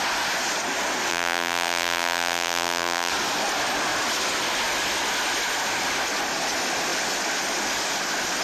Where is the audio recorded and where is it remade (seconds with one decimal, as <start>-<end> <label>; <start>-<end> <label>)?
0.0-1.1 recorded; 1.1-3.1 remade; 3.1-8.4 recorded